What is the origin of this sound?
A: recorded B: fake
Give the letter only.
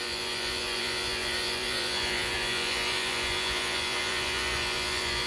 B